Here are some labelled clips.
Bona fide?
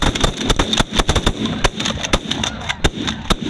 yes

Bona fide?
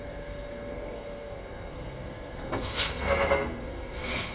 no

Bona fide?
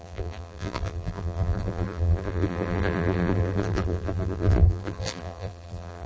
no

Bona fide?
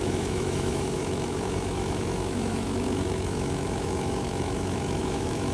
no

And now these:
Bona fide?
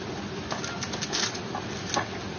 yes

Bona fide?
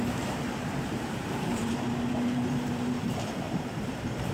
no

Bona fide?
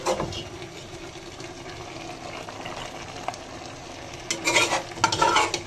yes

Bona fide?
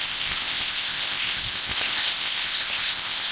no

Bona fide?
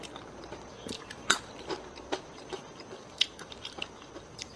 no